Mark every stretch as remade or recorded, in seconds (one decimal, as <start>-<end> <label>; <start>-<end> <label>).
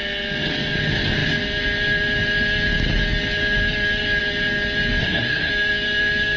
0.0-5.0 recorded; 5.0-5.5 remade; 5.5-6.4 recorded